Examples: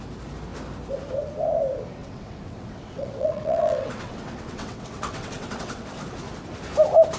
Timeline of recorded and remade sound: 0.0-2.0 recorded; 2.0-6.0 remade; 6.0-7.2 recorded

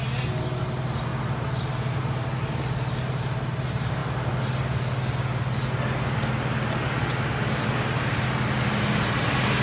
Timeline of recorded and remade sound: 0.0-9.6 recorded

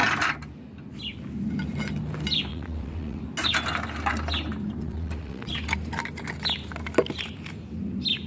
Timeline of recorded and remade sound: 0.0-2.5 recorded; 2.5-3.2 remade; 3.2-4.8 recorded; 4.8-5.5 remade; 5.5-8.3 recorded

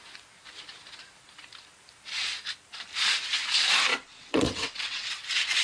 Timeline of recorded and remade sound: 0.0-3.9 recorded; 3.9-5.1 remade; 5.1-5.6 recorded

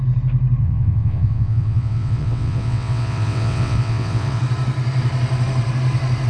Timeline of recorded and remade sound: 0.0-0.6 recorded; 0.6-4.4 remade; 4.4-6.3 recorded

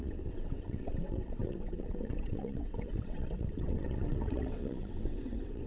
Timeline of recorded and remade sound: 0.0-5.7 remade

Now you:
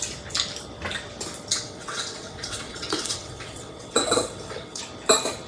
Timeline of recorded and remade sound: 0.0-1.5 recorded; 1.5-4.8 remade; 4.8-5.5 recorded

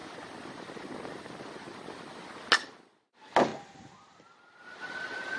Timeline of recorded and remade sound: 0.0-5.4 recorded